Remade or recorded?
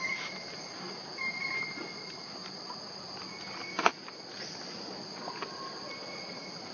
recorded